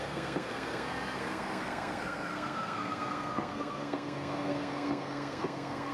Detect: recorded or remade remade